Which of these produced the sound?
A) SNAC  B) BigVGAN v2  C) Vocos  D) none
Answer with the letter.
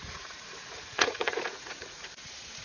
C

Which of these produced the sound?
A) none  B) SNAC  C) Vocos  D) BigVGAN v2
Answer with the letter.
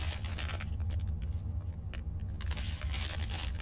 A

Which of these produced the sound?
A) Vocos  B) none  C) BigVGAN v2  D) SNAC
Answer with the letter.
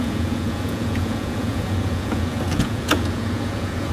A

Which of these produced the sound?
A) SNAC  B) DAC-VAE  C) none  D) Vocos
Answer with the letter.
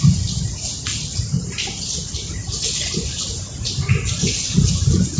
C